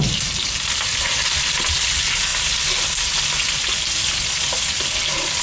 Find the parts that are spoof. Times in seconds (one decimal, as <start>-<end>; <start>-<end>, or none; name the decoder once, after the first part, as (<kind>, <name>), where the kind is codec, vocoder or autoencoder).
none